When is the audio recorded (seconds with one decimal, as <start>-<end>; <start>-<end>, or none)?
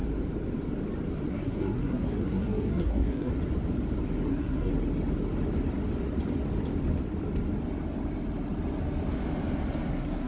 0.0-1.3; 3.3-4.3; 4.7-9.9